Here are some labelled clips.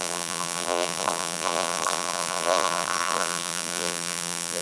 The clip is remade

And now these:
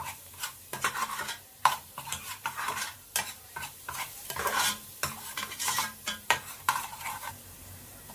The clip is remade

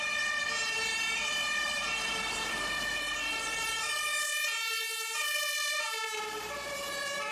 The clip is remade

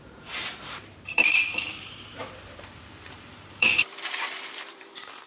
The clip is remade